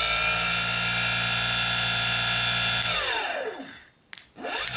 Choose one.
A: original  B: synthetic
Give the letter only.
A